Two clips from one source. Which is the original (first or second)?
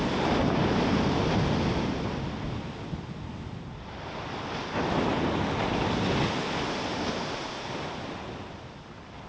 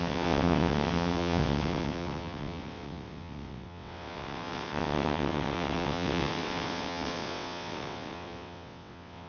first